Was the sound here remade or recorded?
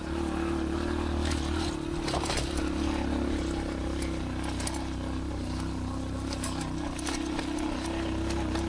recorded